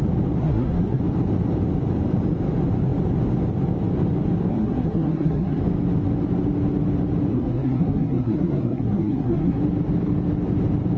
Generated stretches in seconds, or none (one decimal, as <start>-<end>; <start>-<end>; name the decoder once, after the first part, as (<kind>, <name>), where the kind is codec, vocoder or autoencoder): 0.4-1.0 (codec, SNAC); 4.5-5.6; 7.3-9.6